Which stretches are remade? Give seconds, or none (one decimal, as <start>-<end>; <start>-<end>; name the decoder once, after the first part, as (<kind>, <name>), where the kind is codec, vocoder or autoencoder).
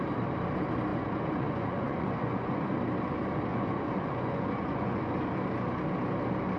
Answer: 0.9-2.7 (vocoder, Vocos); 3.5-5.1